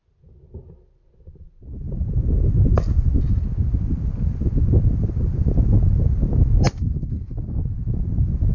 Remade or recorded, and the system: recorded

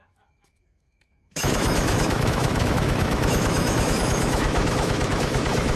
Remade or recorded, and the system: remade, autoencoder, DAC-VAE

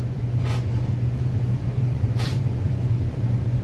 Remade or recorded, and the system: remade, vocoder, Vocos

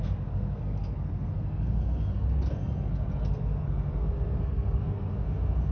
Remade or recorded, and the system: remade, codec, SNAC